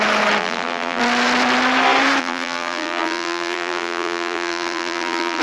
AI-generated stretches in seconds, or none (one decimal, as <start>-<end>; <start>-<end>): 0.4-1.0; 2.2-5.4